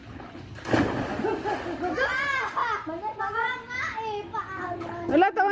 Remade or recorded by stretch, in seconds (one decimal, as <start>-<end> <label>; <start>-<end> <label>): 0.0-5.5 recorded